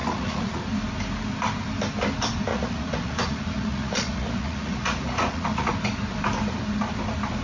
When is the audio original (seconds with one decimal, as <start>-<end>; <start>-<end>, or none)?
0.6-2.5; 5.7-7.4